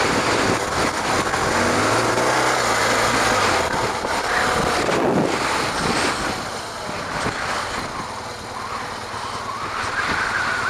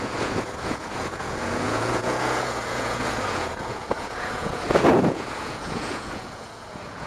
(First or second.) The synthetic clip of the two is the second